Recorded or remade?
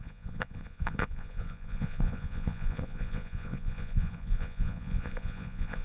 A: remade